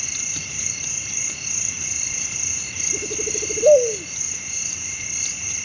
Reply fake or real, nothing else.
real